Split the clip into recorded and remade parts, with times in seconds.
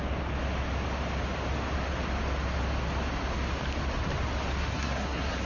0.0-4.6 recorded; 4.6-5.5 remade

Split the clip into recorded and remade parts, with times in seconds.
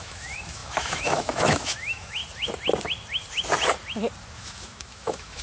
0.0-2.2 remade; 2.2-4.3 recorded; 4.3-5.4 remade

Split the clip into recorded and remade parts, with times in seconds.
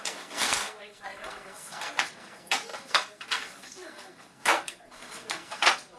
0.0-6.0 remade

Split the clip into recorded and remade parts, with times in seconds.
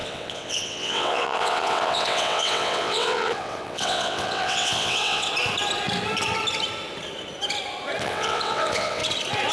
0.0-5.3 remade; 5.3-8.0 recorded; 8.0-9.0 remade; 9.0-9.5 recorded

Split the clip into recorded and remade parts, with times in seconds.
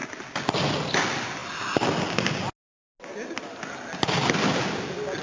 0.0-5.2 recorded